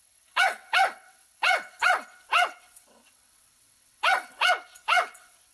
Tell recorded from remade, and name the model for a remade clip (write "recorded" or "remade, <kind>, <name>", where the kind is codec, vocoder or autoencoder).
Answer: remade, vocoder, WaveNeXt